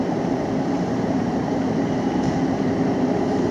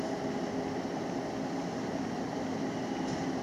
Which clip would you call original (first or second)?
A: second